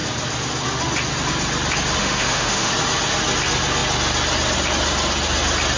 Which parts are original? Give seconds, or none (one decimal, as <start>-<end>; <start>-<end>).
0.0-2.0; 2.7-5.8